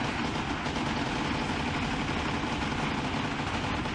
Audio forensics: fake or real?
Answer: real